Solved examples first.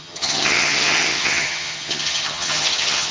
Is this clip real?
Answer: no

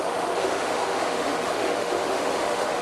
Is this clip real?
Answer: no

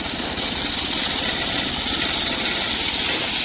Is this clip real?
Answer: yes